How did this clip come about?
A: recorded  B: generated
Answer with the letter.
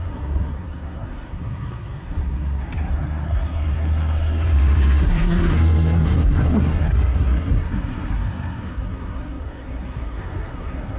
B